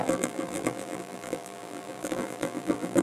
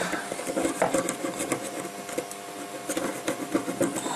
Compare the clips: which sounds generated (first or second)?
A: first